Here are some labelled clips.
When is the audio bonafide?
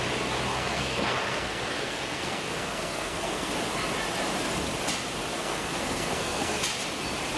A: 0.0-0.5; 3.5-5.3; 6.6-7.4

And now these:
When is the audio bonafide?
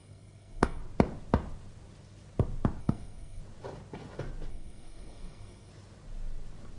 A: 0.8-2.8; 3.4-4.5; 5.7-6.8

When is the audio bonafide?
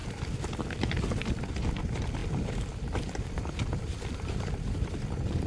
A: 0.0-5.5